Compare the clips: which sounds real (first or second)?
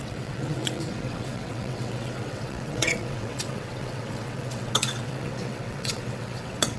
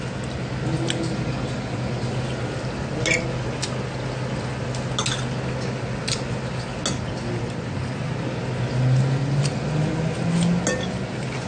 second